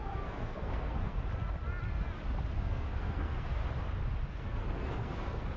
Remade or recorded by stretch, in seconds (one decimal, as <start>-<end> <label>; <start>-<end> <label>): 0.0-1.2 remade; 1.2-2.6 recorded; 2.6-3.6 remade; 3.6-4.3 recorded; 4.3-5.6 remade